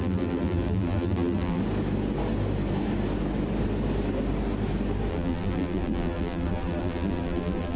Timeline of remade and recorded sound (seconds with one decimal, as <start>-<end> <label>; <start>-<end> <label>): 0.0-1.6 remade; 1.6-5.1 recorded; 5.1-7.8 remade